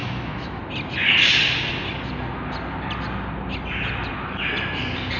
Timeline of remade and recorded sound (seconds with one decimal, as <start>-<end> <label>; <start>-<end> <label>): 0.0-0.6 remade; 0.6-5.2 recorded